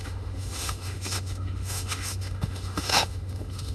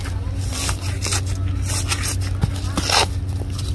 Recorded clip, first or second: second